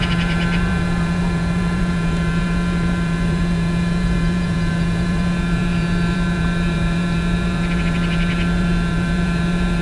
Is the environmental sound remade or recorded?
remade